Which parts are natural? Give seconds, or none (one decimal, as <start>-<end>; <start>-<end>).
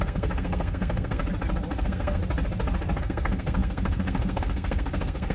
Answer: 1.2-1.8; 2.2-3.0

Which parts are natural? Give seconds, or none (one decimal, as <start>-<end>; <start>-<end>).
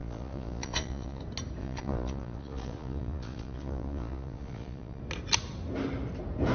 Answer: 1.2-1.6; 5.0-6.5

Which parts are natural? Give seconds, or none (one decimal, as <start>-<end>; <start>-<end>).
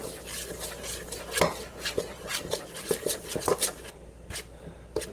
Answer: 0.0-5.1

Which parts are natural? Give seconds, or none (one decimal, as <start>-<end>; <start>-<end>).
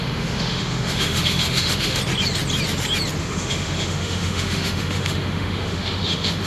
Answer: 2.0-3.2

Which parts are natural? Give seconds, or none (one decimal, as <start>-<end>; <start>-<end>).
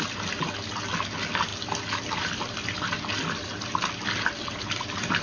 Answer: 0.0-5.2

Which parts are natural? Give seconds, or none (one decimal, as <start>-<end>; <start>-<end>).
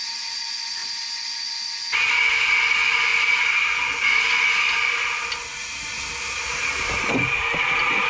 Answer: 0.0-8.1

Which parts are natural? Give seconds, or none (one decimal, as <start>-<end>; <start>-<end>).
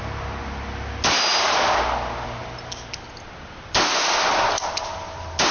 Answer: 0.0-5.5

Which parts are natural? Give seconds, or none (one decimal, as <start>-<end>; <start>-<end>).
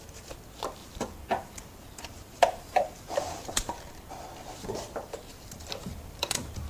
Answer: 0.0-0.8; 4.2-5.3